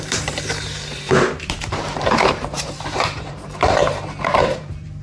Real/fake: fake